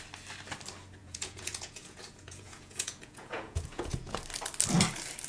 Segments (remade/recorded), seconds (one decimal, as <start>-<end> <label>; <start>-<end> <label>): 0.0-1.0 recorded; 1.0-4.2 remade; 4.2-5.3 recorded